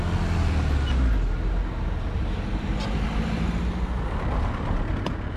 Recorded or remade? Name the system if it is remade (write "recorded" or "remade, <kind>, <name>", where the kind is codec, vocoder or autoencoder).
recorded